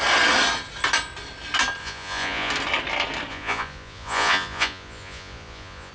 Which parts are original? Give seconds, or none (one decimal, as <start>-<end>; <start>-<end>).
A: 0.0-1.8; 2.5-3.3